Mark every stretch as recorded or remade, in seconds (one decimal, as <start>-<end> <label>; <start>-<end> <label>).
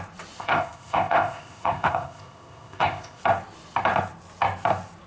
0.0-0.4 recorded; 0.4-3.2 remade; 3.2-5.1 recorded